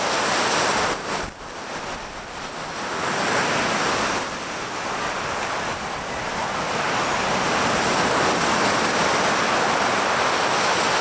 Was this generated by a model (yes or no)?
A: no